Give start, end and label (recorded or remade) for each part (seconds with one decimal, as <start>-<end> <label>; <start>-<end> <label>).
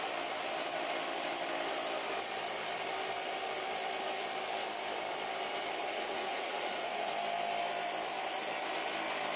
0.0-5.8 recorded; 5.8-7.1 remade; 7.1-9.4 recorded